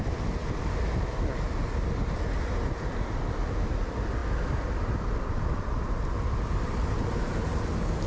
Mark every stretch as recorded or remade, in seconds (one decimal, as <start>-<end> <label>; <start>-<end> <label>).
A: 0.0-8.1 recorded

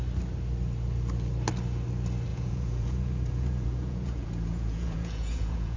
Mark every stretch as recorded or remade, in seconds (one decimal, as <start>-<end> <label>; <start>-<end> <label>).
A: 0.0-2.3 recorded; 2.3-5.8 remade

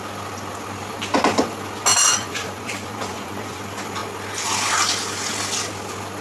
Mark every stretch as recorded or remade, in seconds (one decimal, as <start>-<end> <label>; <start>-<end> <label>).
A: 0.0-2.1 recorded; 2.1-3.6 remade; 3.6-6.2 recorded

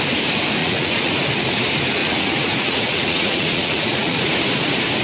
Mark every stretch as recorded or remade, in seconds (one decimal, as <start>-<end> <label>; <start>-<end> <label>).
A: 0.0-0.6 recorded; 0.6-1.1 remade; 1.1-2.0 recorded; 2.0-4.3 remade; 4.3-5.0 recorded

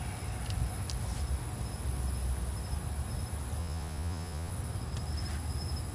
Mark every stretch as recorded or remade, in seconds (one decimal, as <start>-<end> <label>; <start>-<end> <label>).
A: 0.0-3.6 recorded; 3.6-4.5 remade; 4.5-5.9 recorded

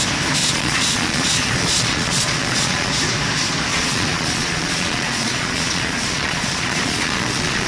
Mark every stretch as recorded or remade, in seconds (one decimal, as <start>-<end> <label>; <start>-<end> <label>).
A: 0.0-0.4 recorded; 0.4-2.9 remade; 2.9-3.7 recorded; 3.7-7.7 remade